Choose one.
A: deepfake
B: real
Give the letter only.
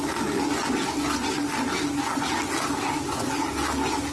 B